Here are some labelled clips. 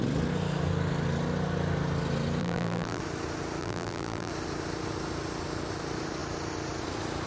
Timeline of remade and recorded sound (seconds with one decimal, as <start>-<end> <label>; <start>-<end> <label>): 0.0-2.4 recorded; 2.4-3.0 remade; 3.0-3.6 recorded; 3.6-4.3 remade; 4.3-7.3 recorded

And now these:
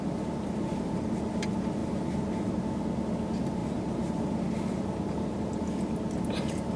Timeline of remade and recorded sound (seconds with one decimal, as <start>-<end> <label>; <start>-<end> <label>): 0.0-3.6 recorded; 3.6-5.7 remade; 5.7-6.8 recorded

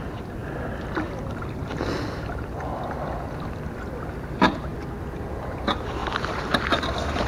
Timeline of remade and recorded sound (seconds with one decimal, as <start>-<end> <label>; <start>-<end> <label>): 0.0-6.0 recorded; 6.0-6.6 remade; 6.6-7.3 recorded

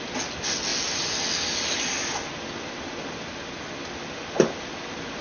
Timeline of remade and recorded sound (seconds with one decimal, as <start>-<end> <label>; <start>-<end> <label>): 0.0-5.2 recorded